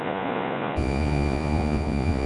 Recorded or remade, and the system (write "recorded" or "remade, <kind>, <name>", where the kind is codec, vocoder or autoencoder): remade, vocoder, Vocos